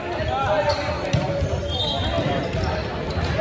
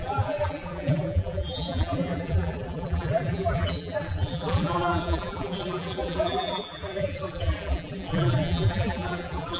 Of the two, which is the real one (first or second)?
first